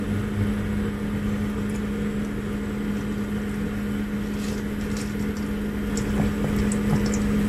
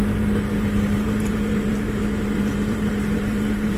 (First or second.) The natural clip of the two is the first